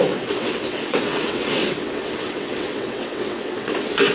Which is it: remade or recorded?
remade